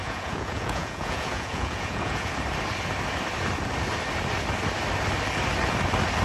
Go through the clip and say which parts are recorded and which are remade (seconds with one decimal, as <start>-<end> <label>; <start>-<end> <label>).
0.0-2.3 remade; 2.3-6.2 recorded

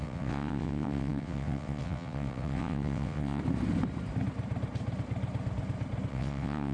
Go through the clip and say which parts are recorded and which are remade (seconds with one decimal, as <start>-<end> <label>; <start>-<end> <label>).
0.0-3.4 remade; 3.4-6.1 recorded; 6.1-6.7 remade